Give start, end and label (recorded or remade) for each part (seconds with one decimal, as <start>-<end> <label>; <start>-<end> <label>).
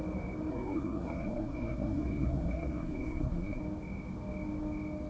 0.0-0.5 recorded; 0.5-3.6 remade; 3.6-5.1 recorded